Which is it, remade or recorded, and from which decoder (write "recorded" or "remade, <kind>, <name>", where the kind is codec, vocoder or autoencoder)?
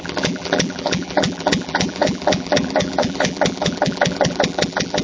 remade, vocoder, BigVGAN v2